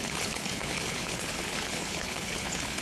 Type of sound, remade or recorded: remade